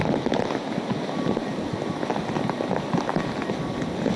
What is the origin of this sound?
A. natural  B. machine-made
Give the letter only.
A